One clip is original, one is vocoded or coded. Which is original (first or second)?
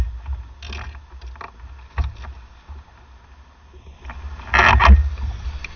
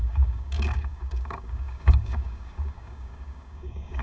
first